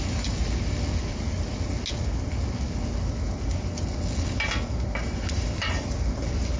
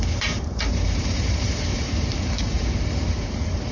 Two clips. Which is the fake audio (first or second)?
second